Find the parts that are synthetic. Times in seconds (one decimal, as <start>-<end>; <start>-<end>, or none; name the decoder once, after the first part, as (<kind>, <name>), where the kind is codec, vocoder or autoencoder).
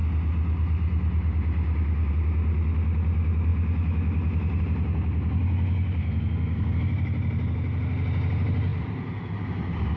6.0-6.8 (codec, SNAC)